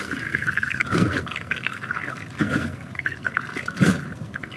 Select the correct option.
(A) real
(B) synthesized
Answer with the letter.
B